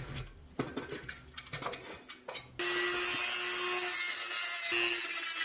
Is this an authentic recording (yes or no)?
yes